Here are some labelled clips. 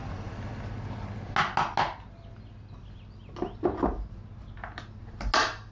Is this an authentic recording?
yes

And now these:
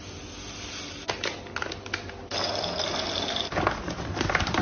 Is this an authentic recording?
yes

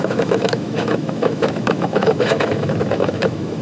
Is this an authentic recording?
no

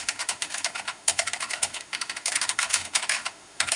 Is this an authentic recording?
no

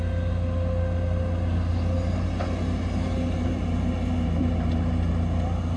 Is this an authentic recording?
yes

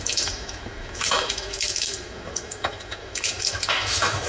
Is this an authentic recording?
no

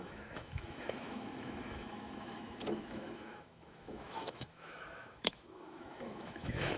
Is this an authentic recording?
no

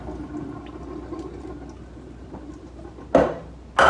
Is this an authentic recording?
yes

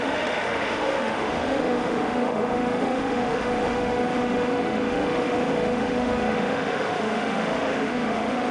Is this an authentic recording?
no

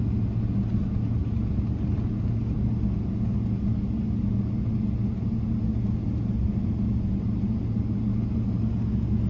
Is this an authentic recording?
yes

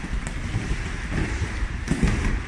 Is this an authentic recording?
yes